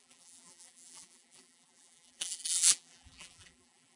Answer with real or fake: fake